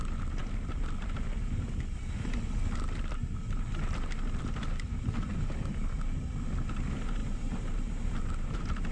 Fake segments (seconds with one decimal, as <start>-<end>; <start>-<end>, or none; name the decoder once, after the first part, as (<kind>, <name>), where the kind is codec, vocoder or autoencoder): 7.2-8.2 (vocoder, BigVGAN v2)